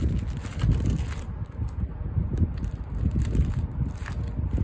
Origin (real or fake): real